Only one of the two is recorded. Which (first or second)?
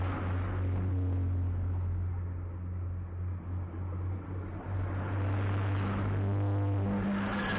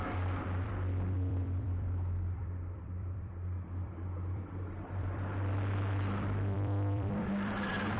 first